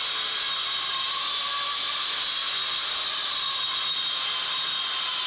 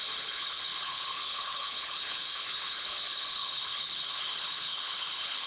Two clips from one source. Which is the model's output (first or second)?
second